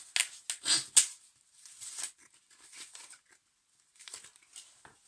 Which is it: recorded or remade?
recorded